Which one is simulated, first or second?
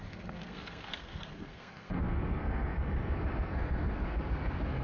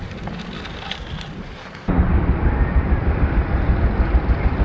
first